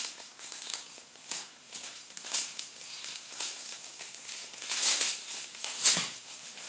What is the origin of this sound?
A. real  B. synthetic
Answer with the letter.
B